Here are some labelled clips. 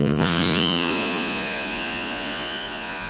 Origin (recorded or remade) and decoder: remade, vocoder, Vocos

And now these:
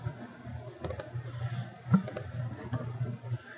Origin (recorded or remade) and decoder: recorded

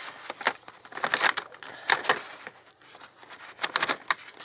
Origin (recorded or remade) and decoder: recorded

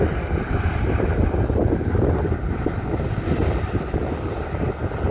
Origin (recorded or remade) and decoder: recorded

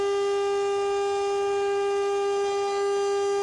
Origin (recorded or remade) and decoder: recorded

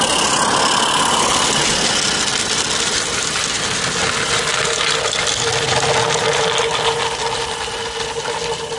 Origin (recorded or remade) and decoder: recorded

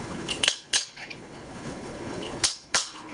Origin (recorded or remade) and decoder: remade, codec, HILCodec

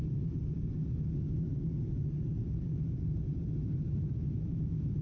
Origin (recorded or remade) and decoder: remade, vocoder, BigVGAN v2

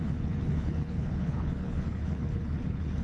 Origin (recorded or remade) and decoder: remade, codec, HILCodec